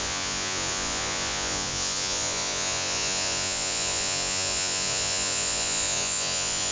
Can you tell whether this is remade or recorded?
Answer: remade